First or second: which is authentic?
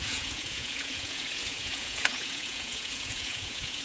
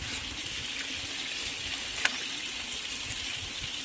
second